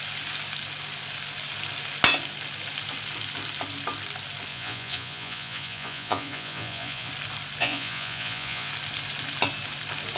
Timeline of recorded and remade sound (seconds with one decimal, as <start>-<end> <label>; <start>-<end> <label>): 0.0-4.5 recorded; 4.5-7.1 remade; 7.1-7.6 recorded; 7.6-8.7 remade; 8.7-10.2 recorded